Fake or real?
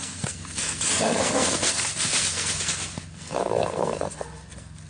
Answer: fake